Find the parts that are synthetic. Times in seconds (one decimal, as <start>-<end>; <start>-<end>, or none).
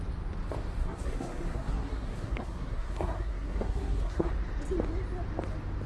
0.8-4.3